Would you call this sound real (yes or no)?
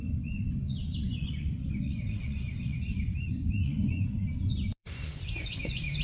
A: no